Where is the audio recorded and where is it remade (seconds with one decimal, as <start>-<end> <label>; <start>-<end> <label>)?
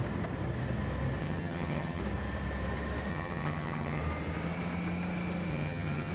0.0-1.2 recorded; 1.2-2.0 remade; 2.0-3.1 recorded; 3.1-4.0 remade; 4.0-5.5 recorded; 5.5-6.1 remade